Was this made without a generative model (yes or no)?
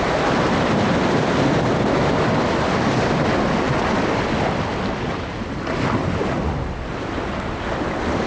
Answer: yes